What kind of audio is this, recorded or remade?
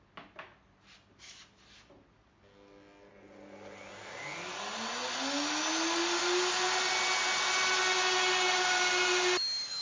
recorded